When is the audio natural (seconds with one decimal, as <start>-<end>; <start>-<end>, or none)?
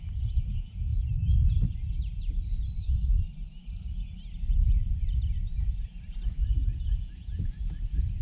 0.9-5.6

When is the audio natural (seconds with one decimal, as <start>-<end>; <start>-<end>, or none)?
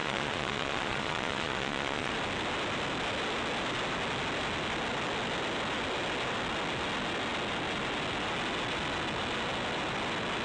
2.1-10.4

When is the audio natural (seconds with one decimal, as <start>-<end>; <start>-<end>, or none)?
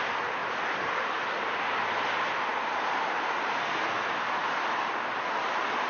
0.0-5.9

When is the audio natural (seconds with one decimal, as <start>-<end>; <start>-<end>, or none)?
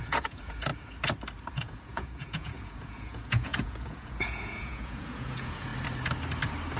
0.7-1.5; 5.7-6.8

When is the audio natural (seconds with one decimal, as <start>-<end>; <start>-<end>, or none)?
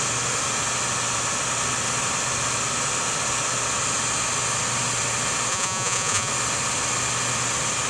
0.0-5.5; 6.3-7.9